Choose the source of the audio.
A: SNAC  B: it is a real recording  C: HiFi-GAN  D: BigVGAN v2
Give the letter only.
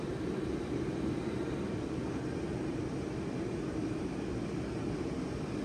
D